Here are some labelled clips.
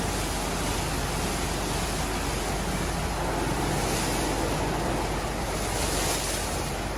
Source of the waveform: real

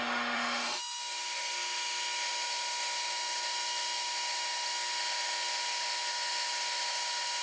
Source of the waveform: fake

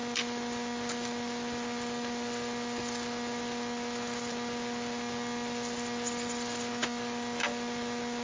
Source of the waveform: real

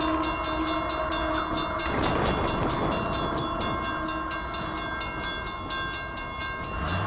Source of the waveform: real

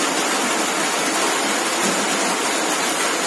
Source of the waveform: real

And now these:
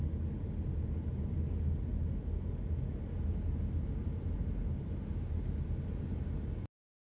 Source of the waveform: real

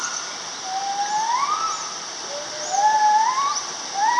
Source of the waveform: real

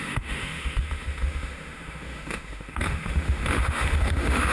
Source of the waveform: fake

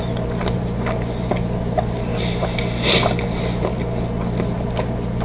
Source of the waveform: real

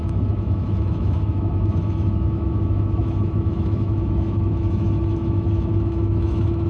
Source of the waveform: fake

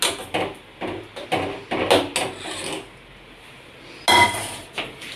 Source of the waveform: real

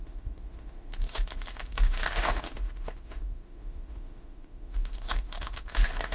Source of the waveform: fake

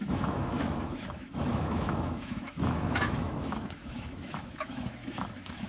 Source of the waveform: fake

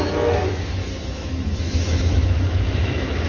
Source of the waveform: fake